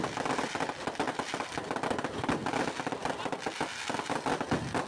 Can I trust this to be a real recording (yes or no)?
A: yes